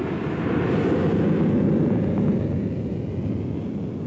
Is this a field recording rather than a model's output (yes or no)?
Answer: yes